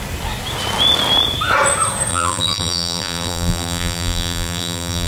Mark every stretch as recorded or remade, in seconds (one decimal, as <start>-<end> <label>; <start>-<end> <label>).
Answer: 0.0-2.1 recorded; 2.1-5.1 remade